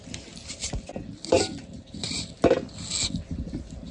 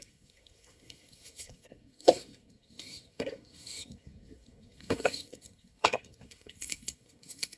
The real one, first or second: first